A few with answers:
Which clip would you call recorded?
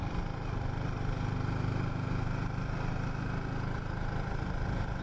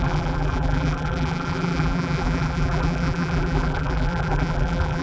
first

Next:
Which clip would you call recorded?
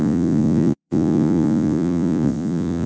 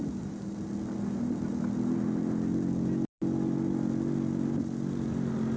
second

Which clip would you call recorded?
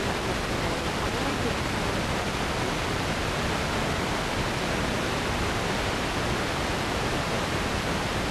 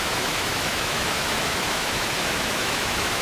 first